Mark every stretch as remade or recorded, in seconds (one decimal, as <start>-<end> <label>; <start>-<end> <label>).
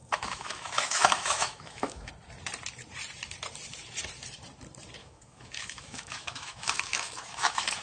0.0-2.1 remade; 2.1-5.0 recorded; 5.0-7.8 remade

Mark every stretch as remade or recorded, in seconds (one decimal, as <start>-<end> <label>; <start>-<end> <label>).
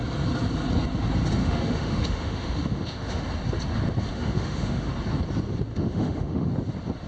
0.0-1.4 recorded; 1.4-3.2 remade; 3.2-4.1 recorded; 4.1-4.9 remade; 4.9-5.7 recorded; 5.7-6.5 remade; 6.5-7.1 recorded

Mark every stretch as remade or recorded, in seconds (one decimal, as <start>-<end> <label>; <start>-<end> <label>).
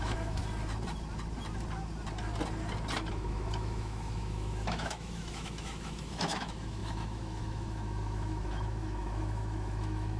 0.0-0.4 remade; 0.4-3.1 recorded; 3.1-10.2 remade